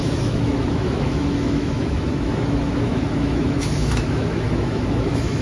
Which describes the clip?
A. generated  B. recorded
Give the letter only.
A